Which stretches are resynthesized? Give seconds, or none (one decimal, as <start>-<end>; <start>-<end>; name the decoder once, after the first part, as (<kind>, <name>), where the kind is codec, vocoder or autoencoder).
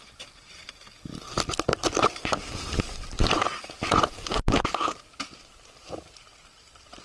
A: 2.0-6.2 (vocoder, BigVGAN v2)